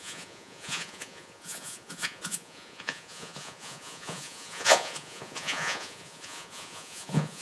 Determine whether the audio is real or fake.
fake